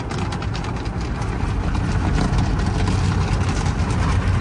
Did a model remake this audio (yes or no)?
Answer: no